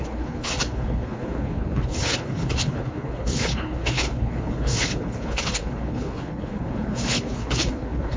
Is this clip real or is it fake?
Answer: fake